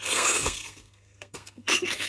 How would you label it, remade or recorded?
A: remade